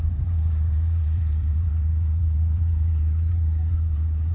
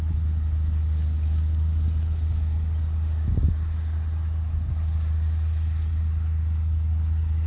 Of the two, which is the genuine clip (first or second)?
second